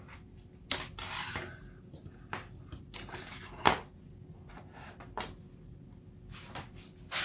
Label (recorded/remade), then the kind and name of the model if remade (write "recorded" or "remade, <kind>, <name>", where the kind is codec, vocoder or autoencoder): recorded